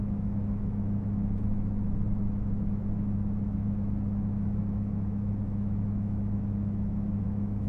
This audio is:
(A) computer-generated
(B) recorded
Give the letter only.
A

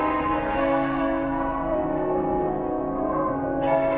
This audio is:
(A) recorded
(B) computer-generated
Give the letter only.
B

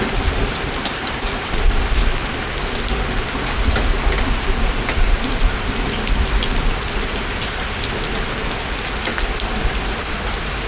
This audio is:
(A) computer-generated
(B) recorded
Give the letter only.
B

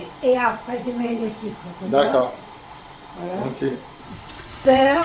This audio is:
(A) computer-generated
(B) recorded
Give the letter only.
A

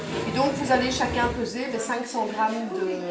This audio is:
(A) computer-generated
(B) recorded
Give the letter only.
B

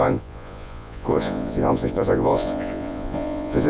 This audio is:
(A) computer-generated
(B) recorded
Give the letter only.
A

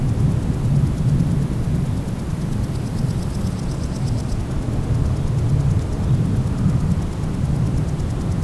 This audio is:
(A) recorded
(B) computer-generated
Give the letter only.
A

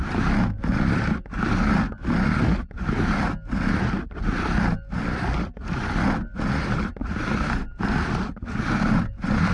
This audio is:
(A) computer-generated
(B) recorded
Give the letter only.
B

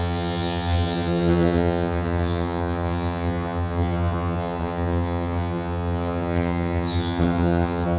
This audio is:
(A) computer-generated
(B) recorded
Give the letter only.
A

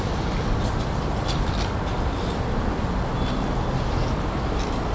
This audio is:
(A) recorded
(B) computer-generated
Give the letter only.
A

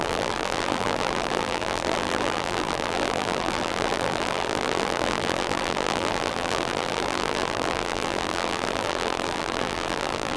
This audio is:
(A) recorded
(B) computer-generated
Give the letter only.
B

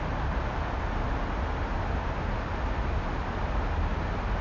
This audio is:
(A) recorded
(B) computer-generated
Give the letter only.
A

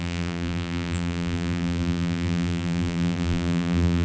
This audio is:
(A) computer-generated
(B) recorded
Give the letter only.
A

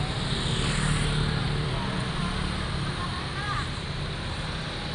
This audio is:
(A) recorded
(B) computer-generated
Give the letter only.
A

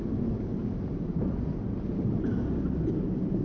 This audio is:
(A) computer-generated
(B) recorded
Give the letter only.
B